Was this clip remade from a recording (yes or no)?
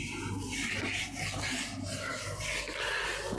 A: no